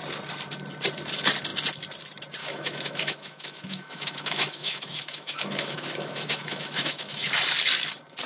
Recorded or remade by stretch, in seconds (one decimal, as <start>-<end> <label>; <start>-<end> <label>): 0.0-2.4 recorded; 2.4-7.3 remade; 7.3-8.3 recorded